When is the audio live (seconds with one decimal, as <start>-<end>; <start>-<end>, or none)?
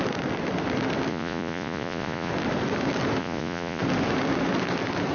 0.0-1.1; 2.3-3.2; 3.8-5.1